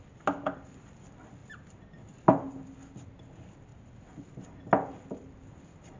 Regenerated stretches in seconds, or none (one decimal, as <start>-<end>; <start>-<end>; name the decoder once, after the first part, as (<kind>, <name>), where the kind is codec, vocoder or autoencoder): 1.4-2.1 (vocoder, BigVGAN v2); 3.7-4.6